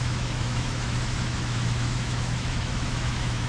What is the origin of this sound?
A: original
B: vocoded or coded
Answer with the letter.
B